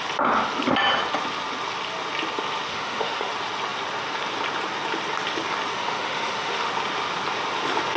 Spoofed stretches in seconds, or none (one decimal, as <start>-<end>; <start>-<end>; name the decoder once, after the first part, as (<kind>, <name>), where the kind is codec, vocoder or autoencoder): 2.7-3.3 (autoencoder, DAC-VAE); 5.7-6.7